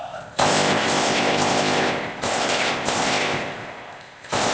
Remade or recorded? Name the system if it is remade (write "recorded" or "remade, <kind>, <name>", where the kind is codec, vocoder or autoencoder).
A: remade, codec, ZipCodec